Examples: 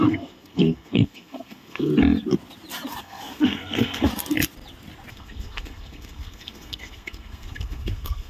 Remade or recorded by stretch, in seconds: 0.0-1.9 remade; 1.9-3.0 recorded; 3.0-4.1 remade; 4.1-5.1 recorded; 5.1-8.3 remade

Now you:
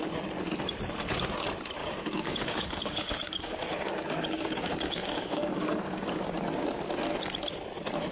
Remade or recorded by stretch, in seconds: 0.0-1.8 recorded; 1.8-6.7 remade; 6.7-8.1 recorded

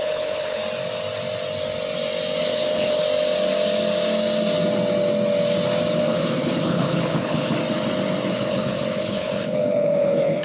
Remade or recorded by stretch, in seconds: 0.0-0.6 remade; 0.6-2.4 recorded; 2.4-3.0 remade; 3.0-6.0 recorded; 6.0-7.6 remade; 7.6-8.3 recorded; 8.3-10.4 remade

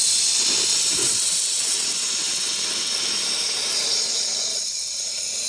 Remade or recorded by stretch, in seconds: 0.0-1.0 recorded; 1.0-3.1 remade; 3.1-4.5 recorded; 4.5-5.0 remade; 5.0-5.5 recorded

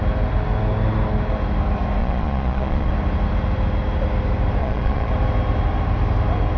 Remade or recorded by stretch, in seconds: 0.0-2.0 recorded; 2.0-2.9 remade; 2.9-4.6 recorded; 4.6-5.1 remade; 5.1-6.6 recorded

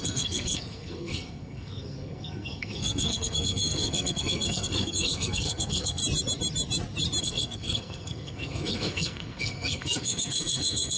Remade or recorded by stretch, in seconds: 0.0-6.0 remade; 6.0-7.2 recorded; 7.2-11.0 remade